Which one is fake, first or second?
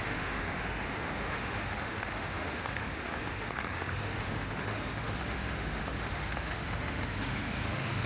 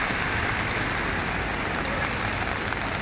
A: first